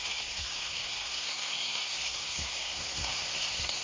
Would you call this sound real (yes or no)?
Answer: no